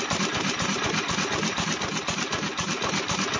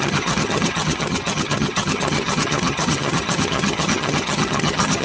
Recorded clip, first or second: first